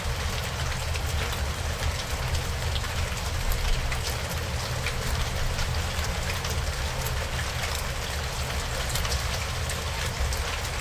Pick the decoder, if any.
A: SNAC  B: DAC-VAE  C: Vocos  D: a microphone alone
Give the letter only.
D